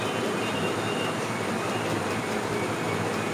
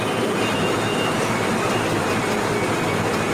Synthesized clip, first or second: first